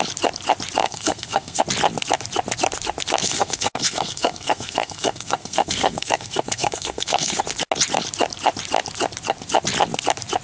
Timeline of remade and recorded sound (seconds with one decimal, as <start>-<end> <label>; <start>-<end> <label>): 0.0-0.8 recorded; 0.8-1.6 remade; 1.6-3.2 recorded; 3.2-7.4 remade; 7.4-10.4 recorded